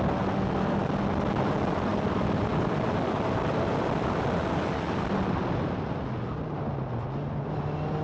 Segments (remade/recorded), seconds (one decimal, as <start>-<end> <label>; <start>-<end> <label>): 0.0-1.9 recorded; 1.9-4.2 remade; 4.2-8.0 recorded